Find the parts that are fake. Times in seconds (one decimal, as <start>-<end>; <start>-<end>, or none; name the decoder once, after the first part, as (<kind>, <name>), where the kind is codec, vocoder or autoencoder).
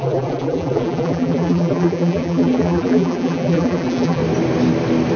0.0-4.2 (vocoder, BigVGAN v2)